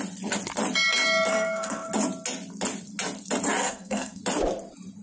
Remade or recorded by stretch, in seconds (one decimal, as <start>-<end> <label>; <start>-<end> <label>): 0.0-1.3 recorded; 1.3-1.9 remade; 1.9-3.6 recorded; 3.6-4.2 remade; 4.2-5.0 recorded